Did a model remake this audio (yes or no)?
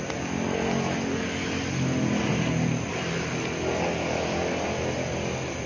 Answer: no